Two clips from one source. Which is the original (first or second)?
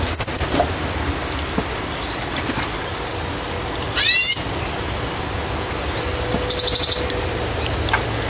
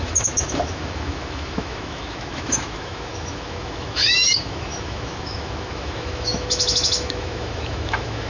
first